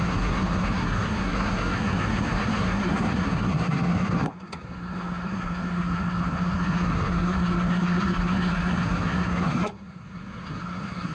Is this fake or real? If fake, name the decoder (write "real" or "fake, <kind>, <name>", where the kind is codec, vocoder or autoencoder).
fake, codec, SNAC